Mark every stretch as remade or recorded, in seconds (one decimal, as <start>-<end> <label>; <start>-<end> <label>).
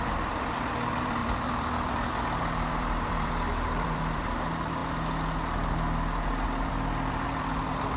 0.0-4.8 remade; 4.8-7.1 recorded; 7.1-8.0 remade